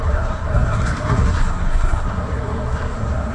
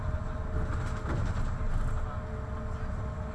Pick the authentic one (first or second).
second